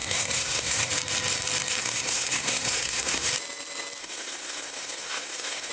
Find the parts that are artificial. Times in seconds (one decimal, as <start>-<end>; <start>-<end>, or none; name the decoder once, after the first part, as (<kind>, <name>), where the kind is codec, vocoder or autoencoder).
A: 0.0-0.9 (codec, SNAC); 1.8-3.3; 4.0-5.7